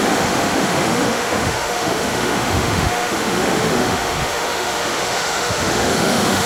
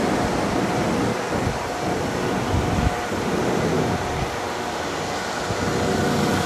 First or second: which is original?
second